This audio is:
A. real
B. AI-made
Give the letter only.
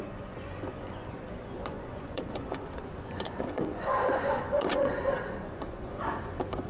B